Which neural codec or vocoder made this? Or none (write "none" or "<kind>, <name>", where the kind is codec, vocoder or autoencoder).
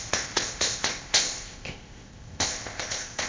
codec, ZipCodec